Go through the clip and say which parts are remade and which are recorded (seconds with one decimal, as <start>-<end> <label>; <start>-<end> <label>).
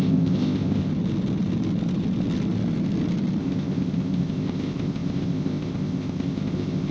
0.0-0.9 remade; 0.9-3.4 recorded; 3.4-6.9 remade